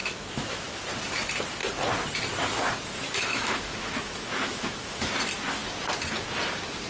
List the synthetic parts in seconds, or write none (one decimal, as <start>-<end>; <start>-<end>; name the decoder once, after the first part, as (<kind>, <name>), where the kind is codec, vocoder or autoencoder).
0.0-0.8 (autoencoder, DAC-VAE); 3.3-5.1